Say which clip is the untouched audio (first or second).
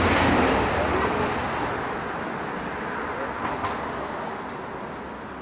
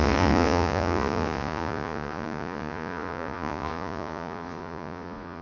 first